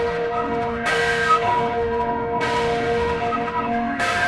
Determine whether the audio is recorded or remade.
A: remade